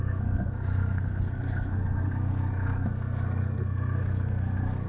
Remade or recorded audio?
remade